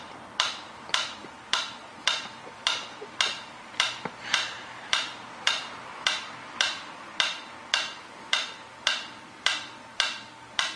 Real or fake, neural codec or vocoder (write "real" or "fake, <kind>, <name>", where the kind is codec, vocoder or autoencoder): fake, vocoder, BigVGAN v2